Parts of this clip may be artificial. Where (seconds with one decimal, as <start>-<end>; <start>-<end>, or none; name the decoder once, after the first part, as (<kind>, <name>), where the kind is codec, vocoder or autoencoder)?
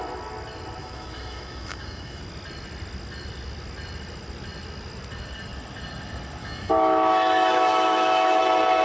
0.8-2.2 (autoencoder, DAC-VAE); 6.4-8.4